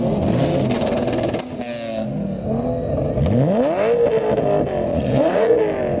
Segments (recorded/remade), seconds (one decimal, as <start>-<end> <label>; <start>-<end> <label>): 0.0-4.9 recorded; 4.9-5.6 remade; 5.6-6.0 recorded